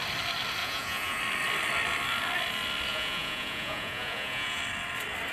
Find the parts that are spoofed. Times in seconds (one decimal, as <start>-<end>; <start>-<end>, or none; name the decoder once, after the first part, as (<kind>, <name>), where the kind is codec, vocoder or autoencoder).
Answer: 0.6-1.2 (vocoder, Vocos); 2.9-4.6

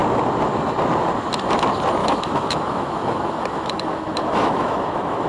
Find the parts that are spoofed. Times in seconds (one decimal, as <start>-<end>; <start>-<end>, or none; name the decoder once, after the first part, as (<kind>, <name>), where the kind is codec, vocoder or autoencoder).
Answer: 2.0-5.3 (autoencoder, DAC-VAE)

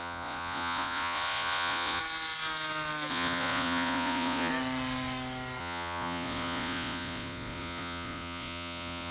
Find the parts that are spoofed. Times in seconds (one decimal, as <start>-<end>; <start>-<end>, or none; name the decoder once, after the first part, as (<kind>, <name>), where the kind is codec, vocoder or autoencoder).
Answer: 0.0-2.0 (vocoder, Vocos); 3.1-4.5; 5.6-9.1

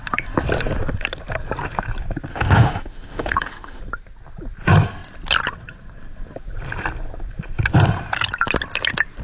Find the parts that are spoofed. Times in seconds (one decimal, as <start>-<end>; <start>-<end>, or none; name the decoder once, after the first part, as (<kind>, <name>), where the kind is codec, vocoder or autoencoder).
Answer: 2.3-3.8 (autoencoder, DAC-VAE)

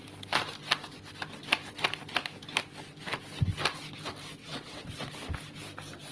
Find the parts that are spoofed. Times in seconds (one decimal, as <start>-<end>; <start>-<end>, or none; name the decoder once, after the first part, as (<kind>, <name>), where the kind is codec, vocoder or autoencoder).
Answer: 4.4-5.1 (vocoder, WaveNeXt)